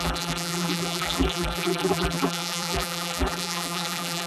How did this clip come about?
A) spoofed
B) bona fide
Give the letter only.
A